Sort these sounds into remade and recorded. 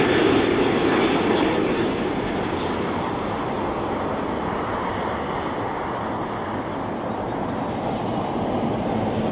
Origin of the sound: recorded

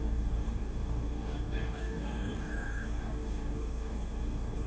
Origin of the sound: remade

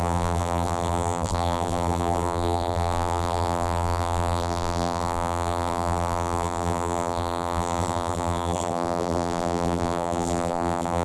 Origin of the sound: remade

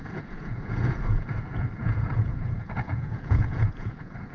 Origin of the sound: remade